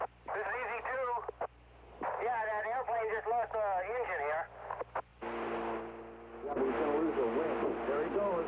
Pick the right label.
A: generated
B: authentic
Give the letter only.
B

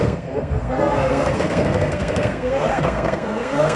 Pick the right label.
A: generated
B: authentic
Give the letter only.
A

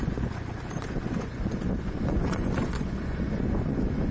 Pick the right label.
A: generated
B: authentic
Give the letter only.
A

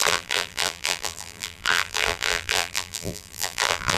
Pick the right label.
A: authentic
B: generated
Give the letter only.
B